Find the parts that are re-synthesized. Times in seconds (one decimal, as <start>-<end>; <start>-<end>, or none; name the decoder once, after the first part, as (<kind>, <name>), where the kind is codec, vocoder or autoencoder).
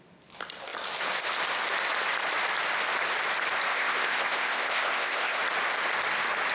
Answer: 3.7-5.4 (codec, ZipCodec)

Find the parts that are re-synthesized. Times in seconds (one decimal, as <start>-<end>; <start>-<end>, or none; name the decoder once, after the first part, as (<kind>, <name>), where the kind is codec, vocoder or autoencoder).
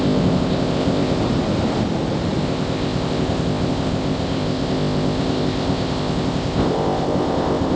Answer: 0.0-1.2 (codec, ZipCodec); 2.4-7.8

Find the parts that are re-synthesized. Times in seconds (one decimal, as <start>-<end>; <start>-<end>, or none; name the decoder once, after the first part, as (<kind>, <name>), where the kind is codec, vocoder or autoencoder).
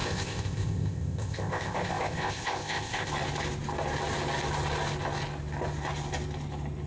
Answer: 0.0-3.1 (codec, ZipCodec)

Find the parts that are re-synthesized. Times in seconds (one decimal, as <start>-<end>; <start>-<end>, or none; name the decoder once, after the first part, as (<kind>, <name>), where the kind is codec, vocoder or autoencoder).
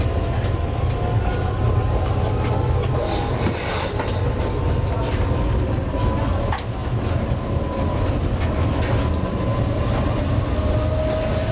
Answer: none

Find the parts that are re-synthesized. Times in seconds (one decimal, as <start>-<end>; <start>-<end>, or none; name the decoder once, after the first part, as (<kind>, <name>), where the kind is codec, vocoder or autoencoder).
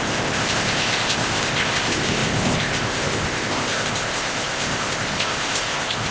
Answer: 0.0-6.1 (codec, ZipCodec)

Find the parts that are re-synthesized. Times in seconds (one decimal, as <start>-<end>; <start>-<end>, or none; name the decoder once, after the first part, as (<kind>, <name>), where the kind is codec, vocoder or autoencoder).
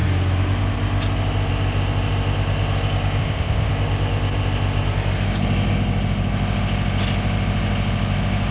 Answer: 3.2-3.7 (codec, ZipCodec)